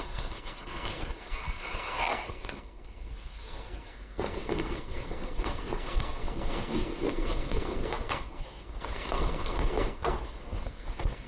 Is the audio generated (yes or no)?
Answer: yes